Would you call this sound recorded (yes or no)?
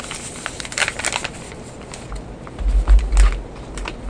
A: yes